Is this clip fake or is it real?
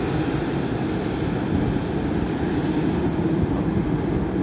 real